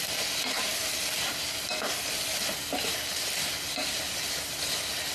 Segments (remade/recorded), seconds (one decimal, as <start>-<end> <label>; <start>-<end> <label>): 0.0-5.1 recorded

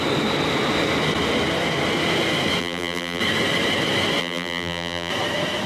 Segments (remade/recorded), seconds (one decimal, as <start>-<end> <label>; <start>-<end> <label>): 0.0-2.6 recorded; 2.6-3.2 remade; 3.2-4.2 recorded; 4.2-5.1 remade; 5.1-5.7 recorded

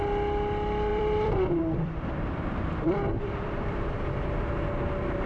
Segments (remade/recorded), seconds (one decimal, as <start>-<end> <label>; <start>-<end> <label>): 0.0-0.9 recorded; 0.9-4.1 remade; 4.1-5.3 recorded

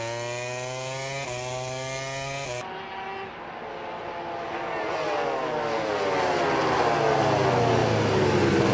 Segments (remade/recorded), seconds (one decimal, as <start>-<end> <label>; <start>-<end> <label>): 0.0-8.7 recorded

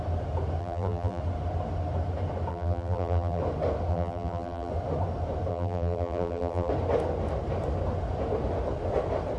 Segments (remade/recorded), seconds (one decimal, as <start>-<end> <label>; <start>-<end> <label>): 0.0-0.6 recorded; 0.6-1.2 remade; 1.2-2.5 recorded; 2.5-3.4 remade; 3.4-3.9 recorded; 3.9-4.7 remade; 4.7-5.5 recorded; 5.5-6.7 remade; 6.7-9.4 recorded

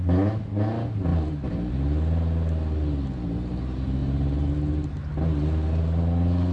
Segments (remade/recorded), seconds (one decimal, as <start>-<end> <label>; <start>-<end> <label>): 0.0-1.1 recorded; 1.1-1.7 remade; 1.7-4.0 recorded; 4.0-4.5 remade; 4.5-6.5 recorded

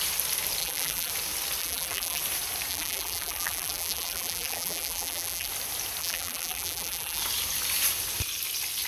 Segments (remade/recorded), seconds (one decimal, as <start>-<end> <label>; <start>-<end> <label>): 0.0-0.6 recorded; 0.6-1.1 remade; 1.1-1.6 recorded; 1.6-2.2 remade; 2.2-2.7 recorded; 2.7-5.5 remade; 5.5-6.0 recorded; 6.0-7.2 remade; 7.2-8.9 recorded

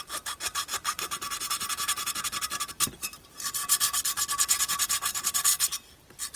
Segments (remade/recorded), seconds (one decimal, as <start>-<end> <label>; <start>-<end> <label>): 0.0-3.6 remade; 3.6-4.6 recorded; 4.6-6.4 remade